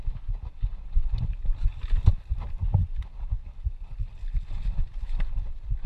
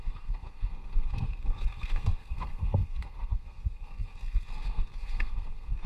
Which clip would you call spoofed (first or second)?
second